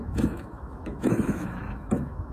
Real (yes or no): no